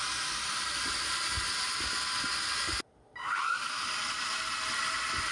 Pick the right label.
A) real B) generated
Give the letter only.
A